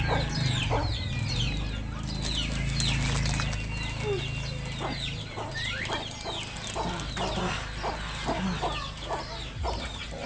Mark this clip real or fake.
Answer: real